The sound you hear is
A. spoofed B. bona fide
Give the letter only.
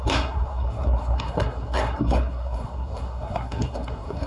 A